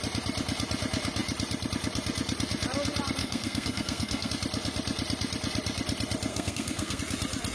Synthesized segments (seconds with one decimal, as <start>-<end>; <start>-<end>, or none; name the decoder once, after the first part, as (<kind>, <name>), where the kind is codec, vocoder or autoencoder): 3.2-4.3 (codec, SNAC); 6.3-7.0